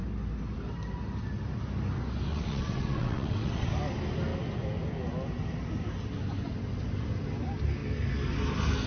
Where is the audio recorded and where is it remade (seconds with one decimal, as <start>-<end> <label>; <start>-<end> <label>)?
0.0-2.3 recorded; 2.3-3.7 remade; 3.7-8.9 recorded